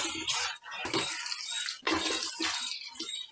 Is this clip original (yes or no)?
yes